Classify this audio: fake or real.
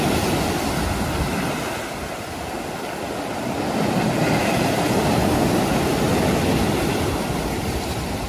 real